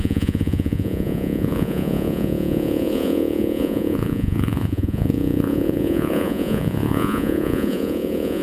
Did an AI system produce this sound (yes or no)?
yes